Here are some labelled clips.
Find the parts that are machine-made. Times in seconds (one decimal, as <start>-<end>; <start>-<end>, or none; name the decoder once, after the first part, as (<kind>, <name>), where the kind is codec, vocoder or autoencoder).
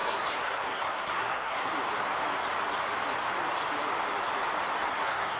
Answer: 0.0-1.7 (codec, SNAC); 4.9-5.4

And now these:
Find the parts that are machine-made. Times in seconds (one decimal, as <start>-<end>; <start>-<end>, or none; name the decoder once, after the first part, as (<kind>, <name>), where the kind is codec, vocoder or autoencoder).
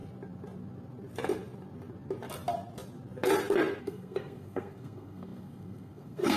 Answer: 3.8-6.4 (codec, SNAC)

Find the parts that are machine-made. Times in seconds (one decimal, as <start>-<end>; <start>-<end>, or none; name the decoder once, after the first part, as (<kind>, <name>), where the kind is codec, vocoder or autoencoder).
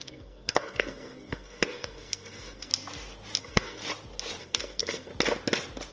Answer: 0.0-2.7 (codec, SNAC); 3.4-3.8; 4.4-5.1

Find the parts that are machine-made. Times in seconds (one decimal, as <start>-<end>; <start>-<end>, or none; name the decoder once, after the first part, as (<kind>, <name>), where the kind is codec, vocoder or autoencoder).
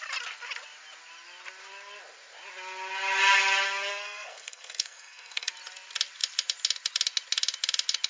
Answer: 3.9-5.5 (codec, SNAC)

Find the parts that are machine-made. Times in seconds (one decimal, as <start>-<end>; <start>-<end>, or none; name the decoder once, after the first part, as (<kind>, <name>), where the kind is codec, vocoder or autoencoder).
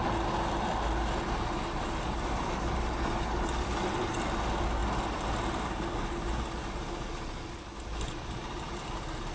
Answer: none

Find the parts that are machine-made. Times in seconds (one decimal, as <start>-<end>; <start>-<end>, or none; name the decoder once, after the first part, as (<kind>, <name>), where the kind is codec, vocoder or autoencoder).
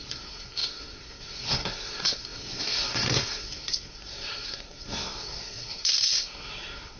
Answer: 0.0-7.0 (codec, SNAC)